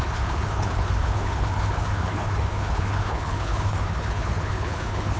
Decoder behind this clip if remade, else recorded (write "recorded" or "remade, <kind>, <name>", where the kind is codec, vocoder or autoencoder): remade, codec, HILCodec